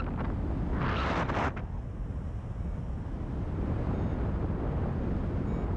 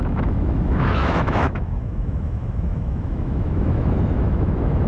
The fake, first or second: second